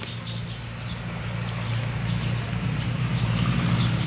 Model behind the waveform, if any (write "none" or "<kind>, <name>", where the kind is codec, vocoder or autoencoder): none